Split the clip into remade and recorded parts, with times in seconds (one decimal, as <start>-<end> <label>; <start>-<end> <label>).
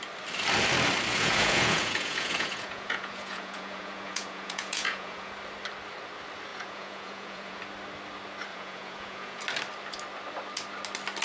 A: 0.0-1.1 recorded; 1.1-5.3 remade; 5.3-6.5 recorded; 6.5-7.6 remade; 7.6-8.5 recorded; 8.5-9.4 remade; 9.4-11.2 recorded